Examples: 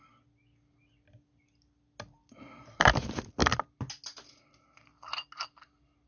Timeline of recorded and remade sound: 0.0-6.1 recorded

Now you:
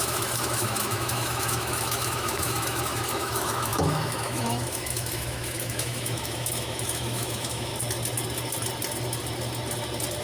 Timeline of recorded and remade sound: 0.0-7.7 remade; 7.7-10.2 recorded